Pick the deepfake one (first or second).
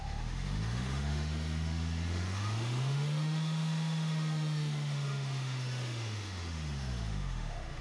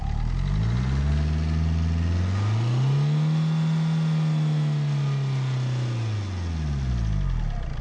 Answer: first